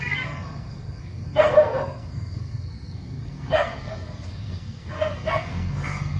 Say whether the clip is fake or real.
fake